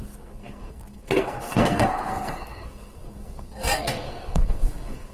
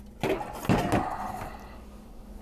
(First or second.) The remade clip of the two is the first